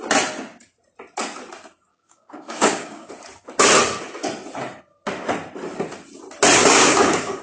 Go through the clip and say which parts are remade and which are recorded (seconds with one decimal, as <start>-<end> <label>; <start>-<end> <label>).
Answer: 0.0-1.9 recorded; 1.9-3.1 remade; 3.1-6.6 recorded; 6.6-7.4 remade